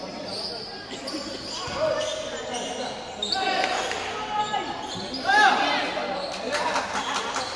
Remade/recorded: recorded